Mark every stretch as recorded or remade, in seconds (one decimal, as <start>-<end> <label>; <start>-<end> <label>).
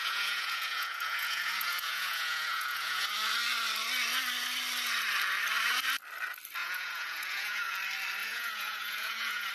0.0-3.1 remade; 3.1-6.6 recorded; 6.6-7.8 remade; 7.8-8.2 recorded; 8.2-9.5 remade